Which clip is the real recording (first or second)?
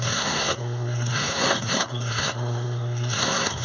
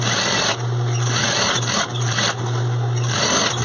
second